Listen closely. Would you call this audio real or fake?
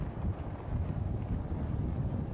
real